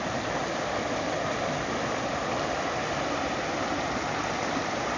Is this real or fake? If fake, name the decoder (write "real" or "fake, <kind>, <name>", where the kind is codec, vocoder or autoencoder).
real